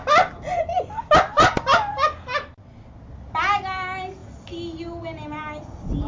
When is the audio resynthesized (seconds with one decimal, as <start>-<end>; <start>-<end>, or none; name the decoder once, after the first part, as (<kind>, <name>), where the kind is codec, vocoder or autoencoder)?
none